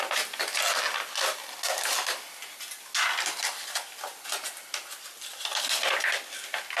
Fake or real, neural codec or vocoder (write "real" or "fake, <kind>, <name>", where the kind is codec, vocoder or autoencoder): real